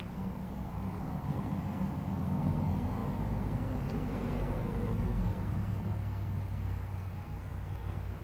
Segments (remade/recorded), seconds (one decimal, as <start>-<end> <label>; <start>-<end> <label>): 0.0-8.2 remade